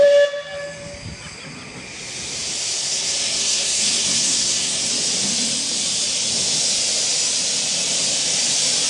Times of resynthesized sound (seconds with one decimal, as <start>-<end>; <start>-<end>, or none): 2.8-4.9